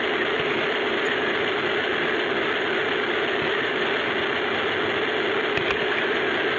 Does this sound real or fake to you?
real